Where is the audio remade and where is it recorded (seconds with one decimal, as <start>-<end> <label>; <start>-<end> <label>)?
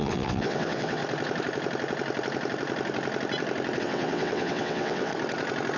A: 0.0-1.0 remade; 1.0-3.8 recorded; 3.8-5.1 remade; 5.1-5.8 recorded